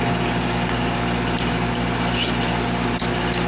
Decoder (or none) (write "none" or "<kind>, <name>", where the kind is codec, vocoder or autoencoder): none